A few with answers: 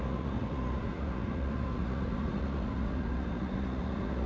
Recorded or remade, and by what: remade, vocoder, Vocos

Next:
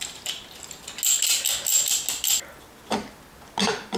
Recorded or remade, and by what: recorded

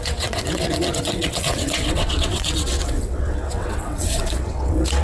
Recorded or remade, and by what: remade, vocoder, WaveNeXt